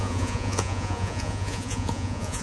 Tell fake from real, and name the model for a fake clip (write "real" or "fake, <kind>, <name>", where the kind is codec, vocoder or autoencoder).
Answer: fake, vocoder, Vocos